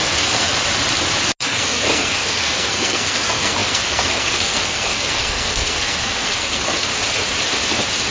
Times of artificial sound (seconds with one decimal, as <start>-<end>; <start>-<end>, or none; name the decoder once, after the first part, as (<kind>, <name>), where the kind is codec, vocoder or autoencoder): 0.0-0.5 (codec, SNAC); 1.4-6.9